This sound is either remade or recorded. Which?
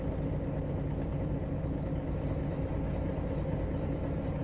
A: recorded